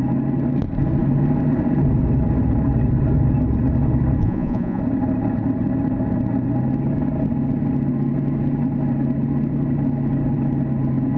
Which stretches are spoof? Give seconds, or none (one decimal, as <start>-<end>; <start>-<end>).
4.2-4.8